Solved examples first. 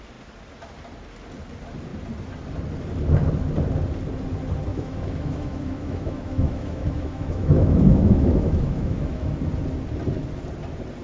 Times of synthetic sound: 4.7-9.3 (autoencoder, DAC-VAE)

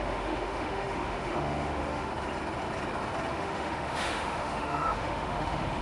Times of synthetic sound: 0.0-2.1 (autoencoder, DAC-VAE); 3.3-5.8

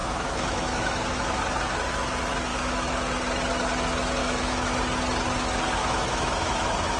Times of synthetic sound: 0.0-1.4 (autoencoder, DAC-VAE); 2.5-3.2; 4.2-4.7; 5.8-7.0

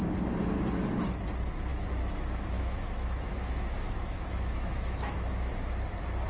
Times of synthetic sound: 1.7-5.5 (autoencoder, DAC-VAE)